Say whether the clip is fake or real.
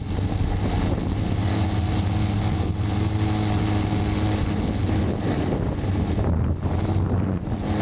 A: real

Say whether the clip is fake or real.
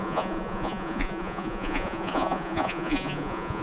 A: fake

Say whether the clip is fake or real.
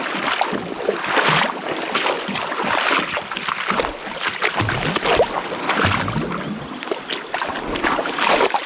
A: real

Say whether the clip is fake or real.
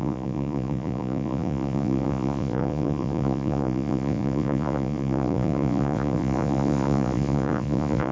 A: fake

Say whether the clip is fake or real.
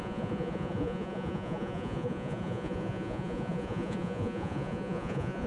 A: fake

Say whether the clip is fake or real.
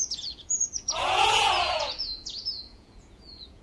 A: fake